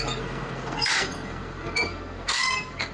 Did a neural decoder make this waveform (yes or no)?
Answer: yes